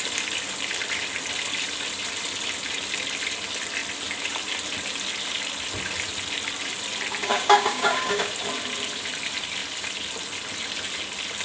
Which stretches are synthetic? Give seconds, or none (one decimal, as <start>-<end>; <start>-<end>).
7.2-8.3